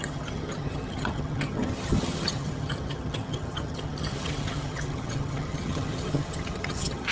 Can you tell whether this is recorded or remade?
remade